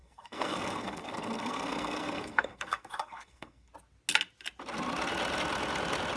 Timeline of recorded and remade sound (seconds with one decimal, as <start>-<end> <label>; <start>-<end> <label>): 0.0-3.7 remade; 3.7-6.2 recorded

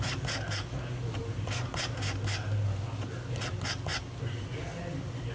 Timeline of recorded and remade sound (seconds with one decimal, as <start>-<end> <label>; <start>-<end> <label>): 0.0-5.3 recorded

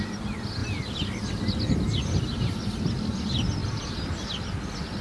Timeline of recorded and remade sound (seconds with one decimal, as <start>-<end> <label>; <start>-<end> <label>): 0.0-5.0 recorded

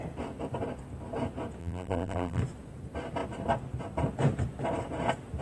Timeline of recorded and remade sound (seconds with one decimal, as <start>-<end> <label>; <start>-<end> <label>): 0.0-1.6 recorded; 1.6-2.4 remade; 2.4-5.4 recorded

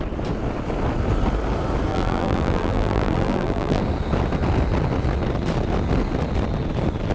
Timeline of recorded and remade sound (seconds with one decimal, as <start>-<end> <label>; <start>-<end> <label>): 0.0-1.9 recorded; 1.9-3.8 remade; 3.8-7.1 recorded

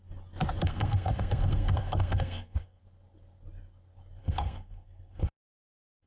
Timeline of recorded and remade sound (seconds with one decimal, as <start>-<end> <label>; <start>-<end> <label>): 0.0-0.6 recorded; 0.6-2.8 remade; 2.8-4.2 recorded; 4.2-6.1 remade

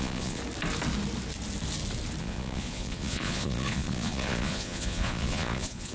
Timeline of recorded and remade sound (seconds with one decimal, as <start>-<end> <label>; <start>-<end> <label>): 0.0-0.4 remade; 0.4-2.2 recorded; 2.2-5.9 remade